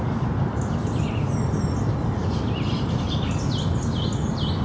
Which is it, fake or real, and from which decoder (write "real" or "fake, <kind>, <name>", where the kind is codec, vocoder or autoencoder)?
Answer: real